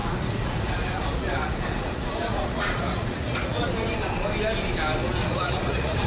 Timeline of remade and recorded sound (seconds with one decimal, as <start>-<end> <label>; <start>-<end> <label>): 0.0-3.7 remade; 3.7-5.0 recorded; 5.0-6.1 remade